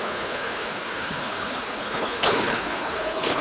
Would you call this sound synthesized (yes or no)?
yes